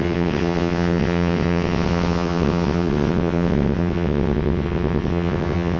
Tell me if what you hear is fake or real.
fake